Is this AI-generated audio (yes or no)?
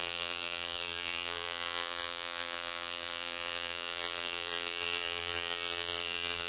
yes